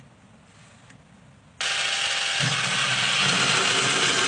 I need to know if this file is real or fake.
real